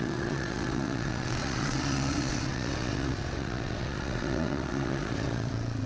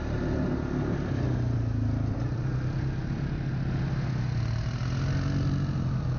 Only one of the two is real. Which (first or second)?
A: second